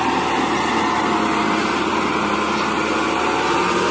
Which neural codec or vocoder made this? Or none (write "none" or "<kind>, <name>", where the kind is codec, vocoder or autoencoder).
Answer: none